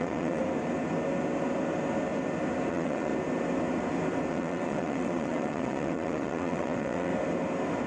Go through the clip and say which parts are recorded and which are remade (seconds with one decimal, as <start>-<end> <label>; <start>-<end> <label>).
0.0-0.4 remade; 0.4-2.7 recorded; 2.7-3.1 remade; 3.1-4.3 recorded; 4.3-7.1 remade; 7.1-7.9 recorded